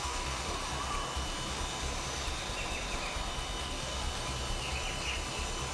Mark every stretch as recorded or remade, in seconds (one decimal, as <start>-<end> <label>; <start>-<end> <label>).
0.0-0.6 remade; 0.6-3.6 recorded; 3.6-4.1 remade; 4.1-5.7 recorded